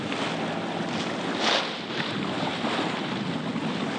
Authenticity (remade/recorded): recorded